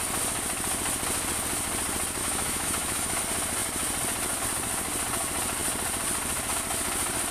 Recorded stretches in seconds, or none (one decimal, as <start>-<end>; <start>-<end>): 0.0-2.2; 3.2-7.3

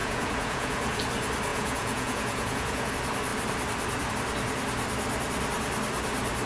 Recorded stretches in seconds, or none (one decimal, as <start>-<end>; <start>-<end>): 1.0-1.5; 2.9-6.5

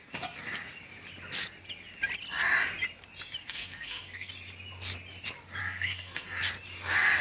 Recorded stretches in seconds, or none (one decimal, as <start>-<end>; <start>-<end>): 0.0-3.4; 4.3-5.6; 6.4-7.2

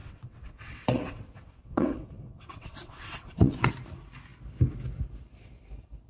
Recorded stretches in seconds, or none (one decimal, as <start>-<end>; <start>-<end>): 3.7-6.1

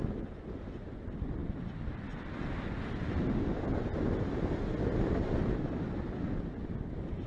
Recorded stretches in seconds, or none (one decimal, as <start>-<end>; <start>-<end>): 0.0-7.3

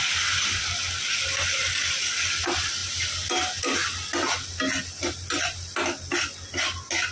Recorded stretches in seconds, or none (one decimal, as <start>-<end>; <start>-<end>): 0.0-7.1

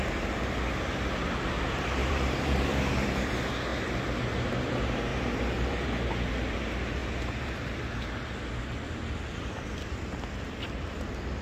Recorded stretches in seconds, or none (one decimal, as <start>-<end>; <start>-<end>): 0.0-2.0; 2.9-3.7; 4.2-5.1; 6.1-7.0; 7.8-11.4

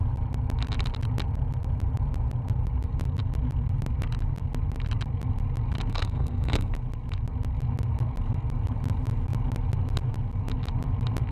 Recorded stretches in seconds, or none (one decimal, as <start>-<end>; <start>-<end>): 0.0-5.9; 6.7-11.3